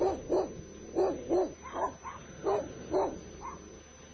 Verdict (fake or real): real